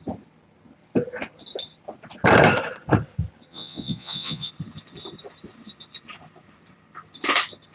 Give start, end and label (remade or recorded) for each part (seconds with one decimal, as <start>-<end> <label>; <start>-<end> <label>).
0.0-3.5 recorded; 3.5-4.5 remade; 4.5-7.7 recorded